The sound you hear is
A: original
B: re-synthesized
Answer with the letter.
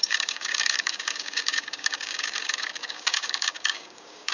B